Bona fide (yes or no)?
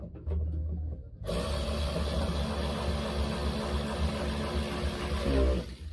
yes